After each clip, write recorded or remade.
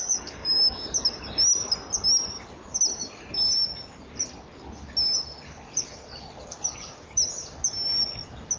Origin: recorded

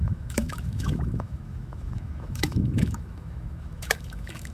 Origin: remade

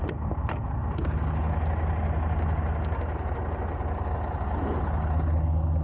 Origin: recorded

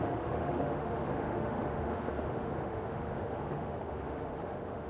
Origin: remade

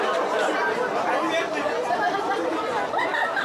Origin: recorded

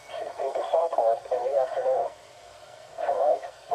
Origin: remade